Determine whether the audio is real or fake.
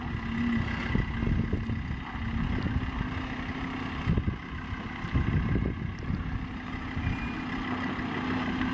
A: real